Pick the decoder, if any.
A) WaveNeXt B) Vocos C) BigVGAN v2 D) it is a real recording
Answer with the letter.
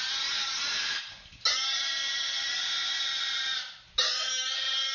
D